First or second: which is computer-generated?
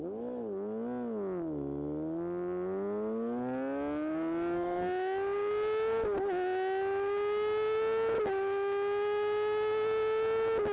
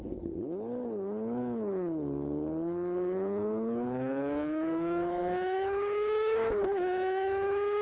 second